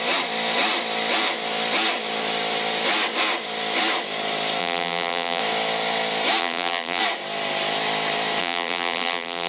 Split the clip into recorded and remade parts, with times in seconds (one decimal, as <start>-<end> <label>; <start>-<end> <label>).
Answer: 0.0-4.6 recorded; 4.6-5.4 remade; 5.4-6.4 recorded; 6.4-7.0 remade; 7.0-8.4 recorded; 8.4-9.5 remade